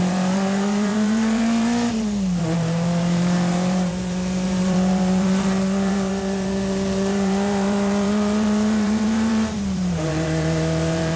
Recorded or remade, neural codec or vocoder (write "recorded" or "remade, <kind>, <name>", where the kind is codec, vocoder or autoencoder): remade, vocoder, BigVGAN v2